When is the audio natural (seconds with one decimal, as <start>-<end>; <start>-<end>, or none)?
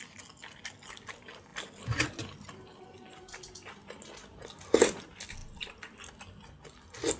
0.0-7.2